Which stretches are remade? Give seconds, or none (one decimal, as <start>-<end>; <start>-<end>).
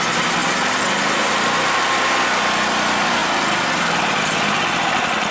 none